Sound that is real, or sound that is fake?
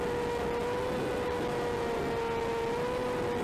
real